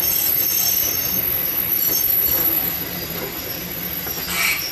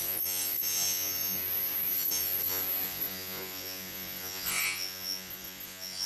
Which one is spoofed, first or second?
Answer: second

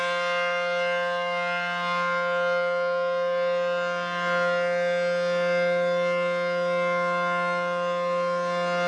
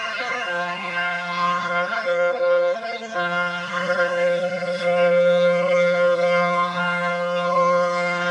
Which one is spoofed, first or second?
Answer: second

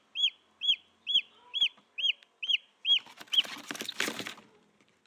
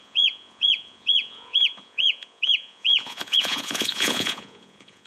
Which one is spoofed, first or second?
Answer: second